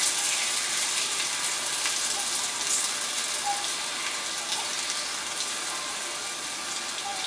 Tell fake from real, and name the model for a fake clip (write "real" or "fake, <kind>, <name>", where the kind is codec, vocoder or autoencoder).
real